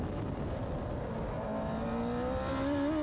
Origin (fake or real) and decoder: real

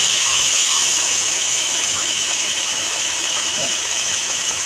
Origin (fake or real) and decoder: fake, autoencoder, DAC-VAE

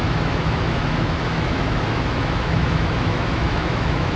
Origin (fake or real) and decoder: fake, autoencoder, DAC-VAE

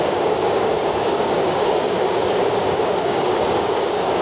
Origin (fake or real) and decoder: fake, codec, DAC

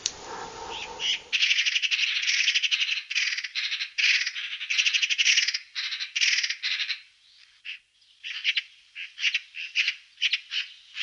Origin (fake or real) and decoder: real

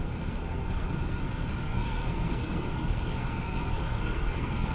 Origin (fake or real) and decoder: fake, codec, SNAC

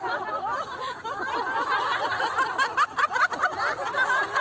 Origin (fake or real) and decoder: real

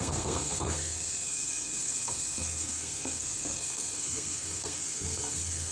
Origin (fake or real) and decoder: fake, codec, SNAC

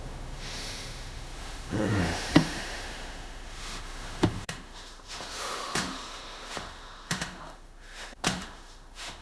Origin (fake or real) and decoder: fake, autoencoder, DAC-VAE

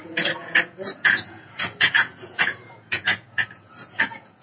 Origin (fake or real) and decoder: fake, vocoder, Vocos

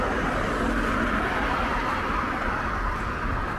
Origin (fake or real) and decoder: real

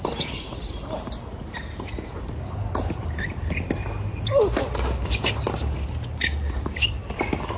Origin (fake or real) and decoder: real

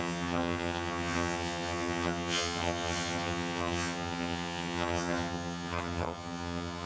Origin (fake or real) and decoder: fake, vocoder, HiFi-GAN